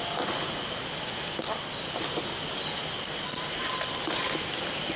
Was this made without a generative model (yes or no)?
yes